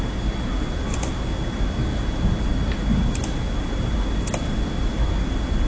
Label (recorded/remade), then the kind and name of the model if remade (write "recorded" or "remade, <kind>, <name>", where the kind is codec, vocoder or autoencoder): recorded